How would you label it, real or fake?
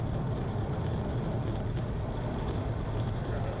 fake